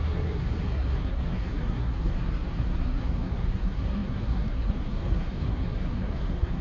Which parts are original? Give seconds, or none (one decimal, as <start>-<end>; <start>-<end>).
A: none